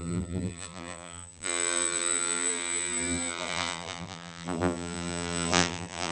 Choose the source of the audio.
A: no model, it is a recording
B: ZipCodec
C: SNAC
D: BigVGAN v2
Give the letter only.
D